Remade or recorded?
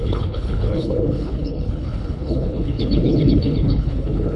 remade